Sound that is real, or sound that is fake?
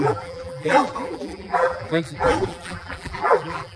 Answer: fake